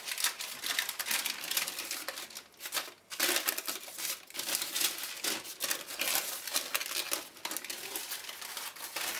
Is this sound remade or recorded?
recorded